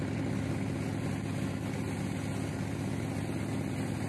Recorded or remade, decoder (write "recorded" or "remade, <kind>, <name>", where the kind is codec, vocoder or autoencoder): recorded